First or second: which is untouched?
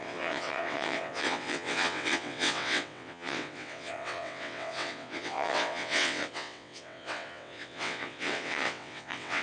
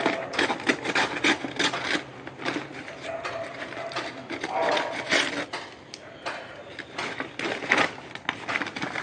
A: second